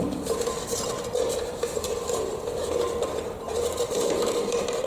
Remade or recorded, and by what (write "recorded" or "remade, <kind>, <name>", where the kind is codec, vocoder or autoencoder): recorded